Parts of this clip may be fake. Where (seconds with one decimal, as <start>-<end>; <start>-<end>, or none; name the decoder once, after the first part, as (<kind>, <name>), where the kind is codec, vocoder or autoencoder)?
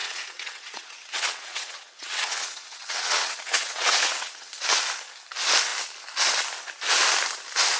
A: 0.0-4.5 (vocoder, WaveNeXt)